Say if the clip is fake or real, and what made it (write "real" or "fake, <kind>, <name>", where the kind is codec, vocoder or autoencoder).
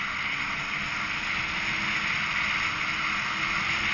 real